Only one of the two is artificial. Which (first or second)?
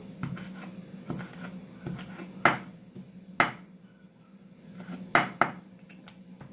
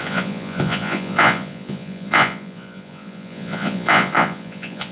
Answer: second